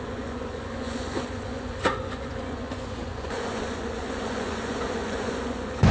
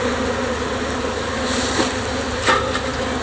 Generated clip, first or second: first